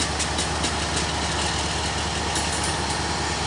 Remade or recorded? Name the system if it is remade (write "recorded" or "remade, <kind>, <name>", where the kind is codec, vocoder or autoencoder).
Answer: recorded